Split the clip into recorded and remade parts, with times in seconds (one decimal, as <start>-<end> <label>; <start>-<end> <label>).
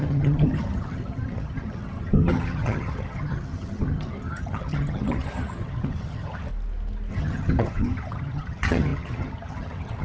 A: 0.0-6.5 remade; 6.5-7.1 recorded; 7.1-10.0 remade